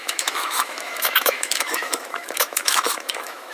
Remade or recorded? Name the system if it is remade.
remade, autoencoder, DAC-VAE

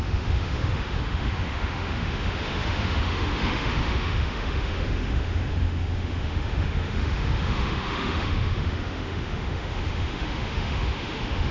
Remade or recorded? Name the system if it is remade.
remade, autoencoder, DAC-VAE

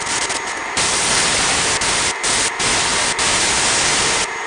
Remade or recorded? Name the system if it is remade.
recorded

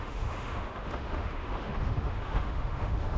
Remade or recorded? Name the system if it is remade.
remade, autoencoder, DAC-VAE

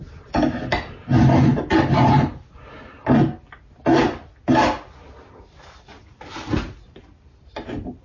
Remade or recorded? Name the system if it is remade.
recorded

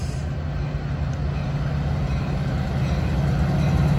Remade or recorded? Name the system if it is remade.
recorded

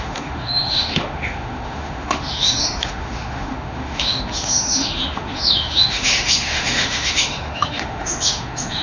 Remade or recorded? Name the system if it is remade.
remade, autoencoder, DAC-VAE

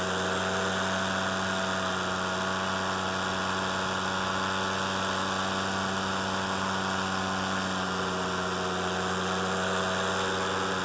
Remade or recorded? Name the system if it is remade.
recorded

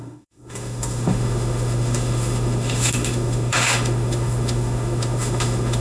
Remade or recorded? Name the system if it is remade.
remade, autoencoder, DAC-VAE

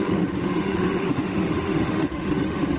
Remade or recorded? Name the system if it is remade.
remade, autoencoder, DAC-VAE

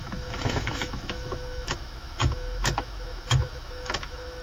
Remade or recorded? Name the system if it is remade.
remade, autoencoder, DAC-VAE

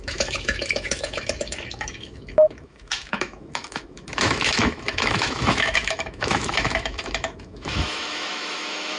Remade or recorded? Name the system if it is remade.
remade, autoencoder, DAC-VAE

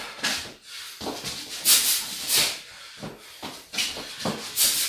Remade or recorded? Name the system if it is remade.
recorded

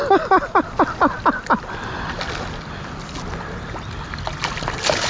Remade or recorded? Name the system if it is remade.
recorded